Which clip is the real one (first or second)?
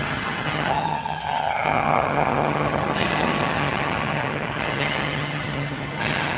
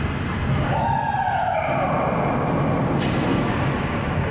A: second